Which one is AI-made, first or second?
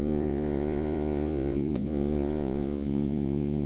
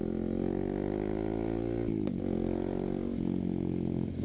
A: first